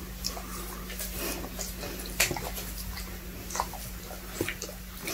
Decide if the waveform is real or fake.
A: real